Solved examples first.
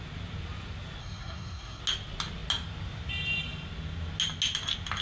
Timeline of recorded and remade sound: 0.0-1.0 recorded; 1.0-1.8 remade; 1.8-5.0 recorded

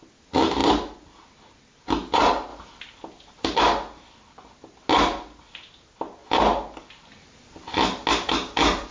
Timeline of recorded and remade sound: 0.0-8.9 recorded

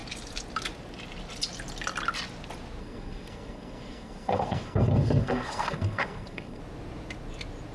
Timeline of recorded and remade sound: 0.0-2.8 recorded; 2.8-6.6 remade; 6.6-7.7 recorded